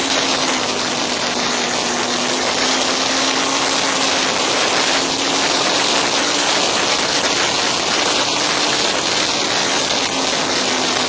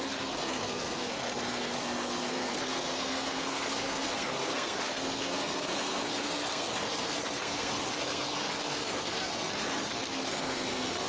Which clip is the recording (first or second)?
first